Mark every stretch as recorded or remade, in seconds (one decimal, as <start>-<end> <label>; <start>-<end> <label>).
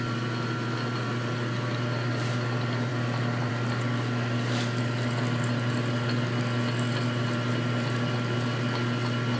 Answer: 0.0-9.4 recorded